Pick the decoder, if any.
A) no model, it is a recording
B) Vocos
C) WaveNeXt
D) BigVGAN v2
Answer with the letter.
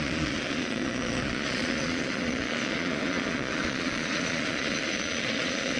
B